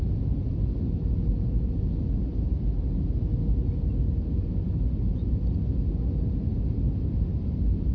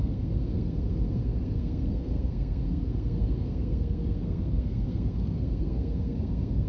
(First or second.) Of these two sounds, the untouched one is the first